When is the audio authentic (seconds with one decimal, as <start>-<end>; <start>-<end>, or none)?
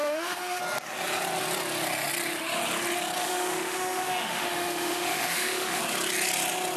0.6-3.2; 5.8-6.8